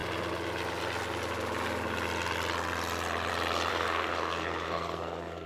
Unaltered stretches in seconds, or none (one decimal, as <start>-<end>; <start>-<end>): 0.0-3.7